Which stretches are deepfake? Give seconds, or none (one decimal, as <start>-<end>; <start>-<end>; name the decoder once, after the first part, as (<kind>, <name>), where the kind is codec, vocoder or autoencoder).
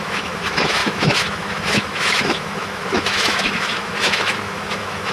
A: 0.0-5.1 (autoencoder, DAC-VAE)